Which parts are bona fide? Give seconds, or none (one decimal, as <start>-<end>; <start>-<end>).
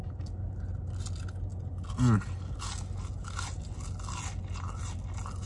0.0-5.5